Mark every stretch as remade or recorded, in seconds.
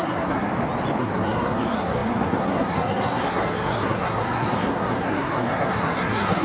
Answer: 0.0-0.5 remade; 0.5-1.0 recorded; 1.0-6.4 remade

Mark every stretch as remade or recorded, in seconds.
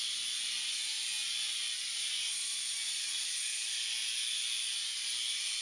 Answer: 0.0-5.6 recorded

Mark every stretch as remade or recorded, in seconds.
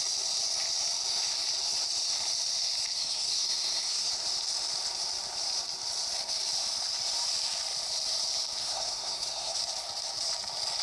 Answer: 0.0-2.9 recorded; 2.9-4.1 remade; 4.1-8.6 recorded; 8.6-9.6 remade; 9.6-10.8 recorded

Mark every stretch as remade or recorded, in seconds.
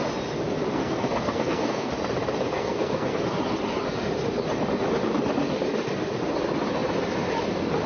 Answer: 0.0-0.7 recorded; 0.7-1.9 remade; 1.9-2.6 recorded; 2.6-3.2 remade; 3.2-7.9 recorded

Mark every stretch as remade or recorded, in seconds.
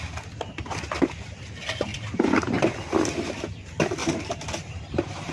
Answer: 0.0-1.9 recorded; 1.9-2.6 remade; 2.6-4.0 recorded; 4.0-5.3 remade